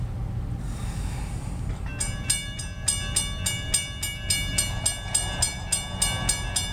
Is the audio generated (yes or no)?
no